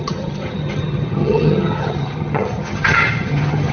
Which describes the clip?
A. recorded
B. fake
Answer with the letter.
B